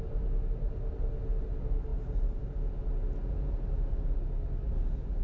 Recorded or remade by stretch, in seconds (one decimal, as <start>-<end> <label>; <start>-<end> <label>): 0.0-5.2 recorded